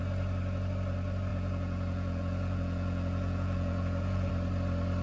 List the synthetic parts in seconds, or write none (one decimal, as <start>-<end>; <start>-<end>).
1.3-4.3